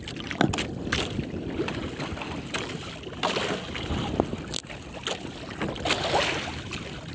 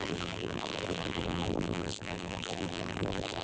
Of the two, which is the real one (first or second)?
first